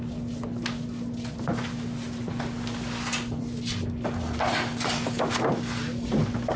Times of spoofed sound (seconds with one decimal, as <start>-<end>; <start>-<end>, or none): none

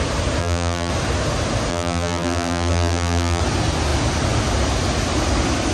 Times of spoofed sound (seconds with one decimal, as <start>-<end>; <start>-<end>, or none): 0.4-0.9; 1.7-3.4